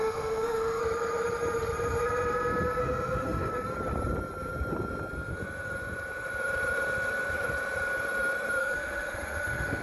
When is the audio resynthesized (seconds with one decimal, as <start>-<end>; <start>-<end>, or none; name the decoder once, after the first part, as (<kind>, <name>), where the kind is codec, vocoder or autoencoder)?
0.0-0.8 (autoencoder, DAC-VAE); 2.8-3.5; 8.6-9.8